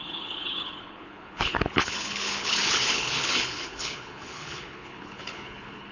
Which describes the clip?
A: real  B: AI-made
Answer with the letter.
B